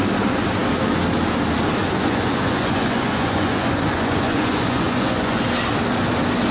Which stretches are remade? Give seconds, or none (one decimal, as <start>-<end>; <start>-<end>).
1.8-5.4

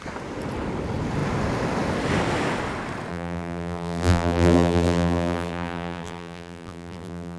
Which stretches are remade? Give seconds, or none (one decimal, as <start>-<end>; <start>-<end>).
3.1-7.4

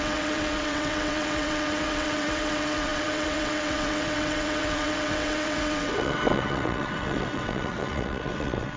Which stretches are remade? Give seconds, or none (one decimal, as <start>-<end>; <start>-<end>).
0.0-8.8

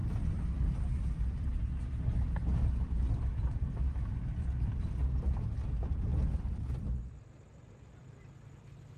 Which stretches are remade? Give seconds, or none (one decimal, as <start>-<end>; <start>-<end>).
4.4-4.9

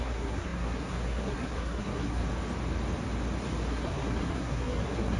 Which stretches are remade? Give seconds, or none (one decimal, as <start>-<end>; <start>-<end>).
0.0-2.2; 3.7-5.2